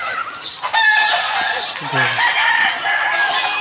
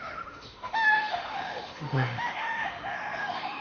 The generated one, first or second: second